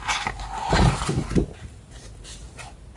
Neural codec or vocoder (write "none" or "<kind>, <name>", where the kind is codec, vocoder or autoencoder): none